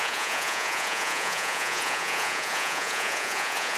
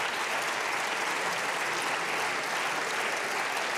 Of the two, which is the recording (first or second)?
second